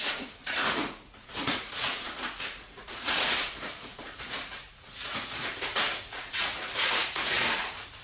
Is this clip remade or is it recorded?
remade